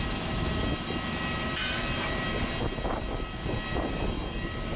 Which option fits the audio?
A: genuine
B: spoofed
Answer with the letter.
A